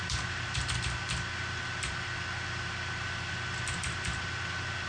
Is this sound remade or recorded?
recorded